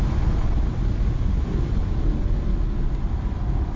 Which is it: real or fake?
real